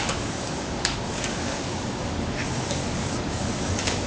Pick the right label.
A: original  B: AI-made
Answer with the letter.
B